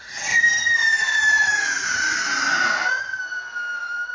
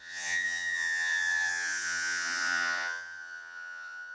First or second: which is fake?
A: second